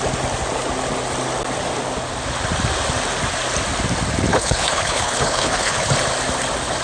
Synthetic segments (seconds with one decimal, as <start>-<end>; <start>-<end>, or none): 4.3-5.9